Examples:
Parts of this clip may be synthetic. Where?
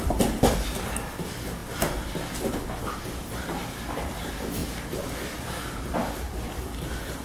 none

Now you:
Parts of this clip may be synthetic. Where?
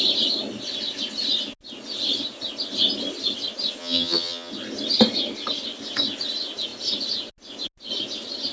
3.8-4.5 (vocoder, HiFi-GAN)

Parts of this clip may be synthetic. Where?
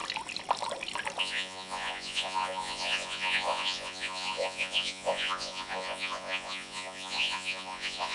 1.2-8.1 (vocoder, Vocos)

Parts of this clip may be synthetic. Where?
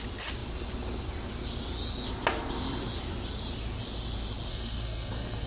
4.5-5.5 (codec, SNAC)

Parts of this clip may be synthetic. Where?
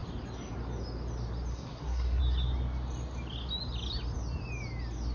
1.5-2.2 (codec, SNAC)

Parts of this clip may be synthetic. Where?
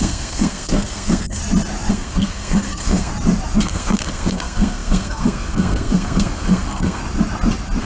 0.0-1.4 (codec, SNAC); 1.9-3.1; 3.6-7.0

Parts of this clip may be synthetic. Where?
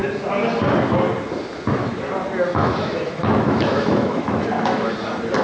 2.6-4.9 (autoencoder, DAC-VAE)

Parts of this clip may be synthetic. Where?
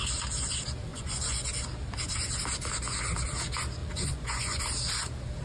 0.9-1.5 (vocoder, Vocos); 3.8-4.6